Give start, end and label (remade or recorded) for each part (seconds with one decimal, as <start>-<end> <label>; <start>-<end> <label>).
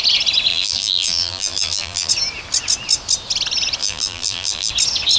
0.0-0.5 recorded; 0.5-2.1 remade; 2.1-3.8 recorded; 3.8-4.7 remade; 4.7-5.2 recorded